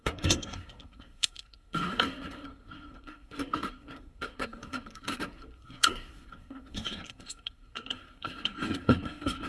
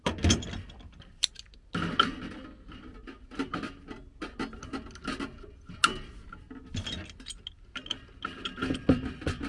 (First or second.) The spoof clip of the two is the first